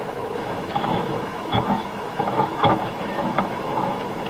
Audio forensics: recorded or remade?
remade